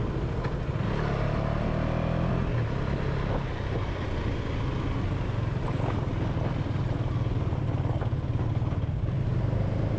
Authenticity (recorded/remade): recorded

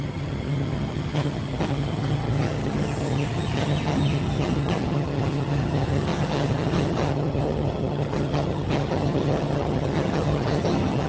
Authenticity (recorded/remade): remade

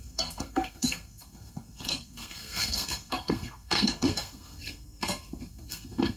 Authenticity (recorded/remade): remade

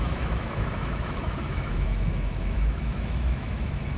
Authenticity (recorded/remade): remade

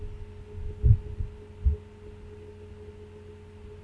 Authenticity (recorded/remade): recorded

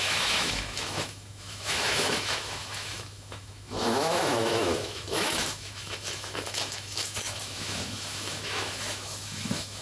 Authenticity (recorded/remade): remade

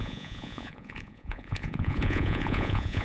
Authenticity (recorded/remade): remade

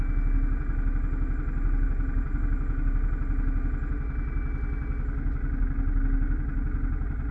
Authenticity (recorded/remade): recorded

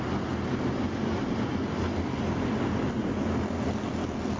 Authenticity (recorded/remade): recorded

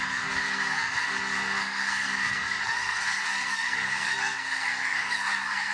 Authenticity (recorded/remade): remade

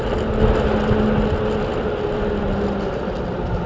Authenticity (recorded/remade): recorded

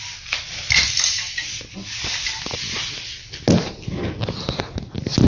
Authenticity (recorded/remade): recorded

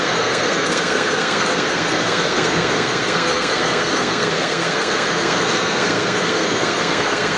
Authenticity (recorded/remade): remade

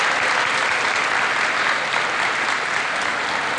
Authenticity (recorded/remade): recorded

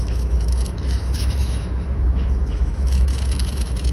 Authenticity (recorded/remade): remade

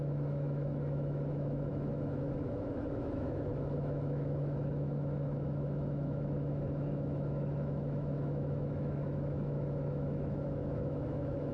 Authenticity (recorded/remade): remade